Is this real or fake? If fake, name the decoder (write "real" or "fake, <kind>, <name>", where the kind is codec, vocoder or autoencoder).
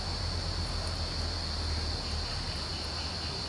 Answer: real